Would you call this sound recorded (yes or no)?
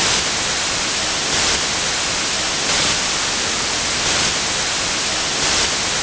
yes